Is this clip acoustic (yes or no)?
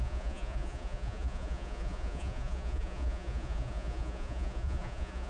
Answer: no